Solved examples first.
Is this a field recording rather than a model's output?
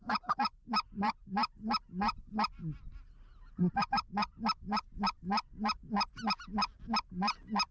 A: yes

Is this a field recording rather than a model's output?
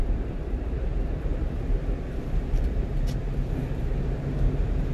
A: no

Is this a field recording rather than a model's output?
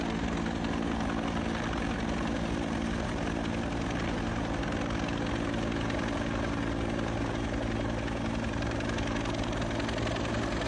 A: yes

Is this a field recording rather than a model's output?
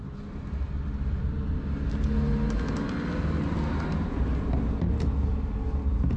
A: yes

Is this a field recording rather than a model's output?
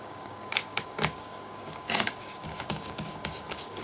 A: no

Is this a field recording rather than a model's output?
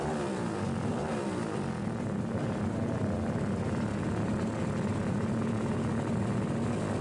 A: yes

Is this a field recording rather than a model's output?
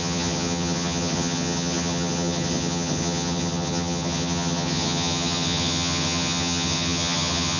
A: no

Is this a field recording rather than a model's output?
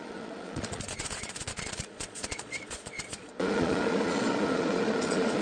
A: no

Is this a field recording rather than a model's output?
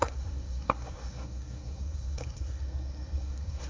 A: no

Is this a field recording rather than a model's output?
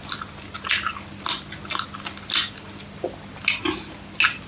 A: yes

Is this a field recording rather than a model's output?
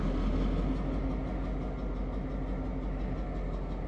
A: yes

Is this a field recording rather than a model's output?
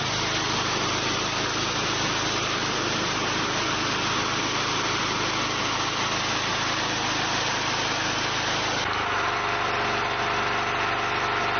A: yes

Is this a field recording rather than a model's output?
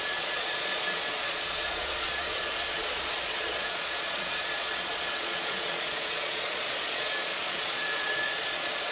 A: no